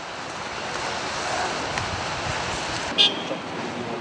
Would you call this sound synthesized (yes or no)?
no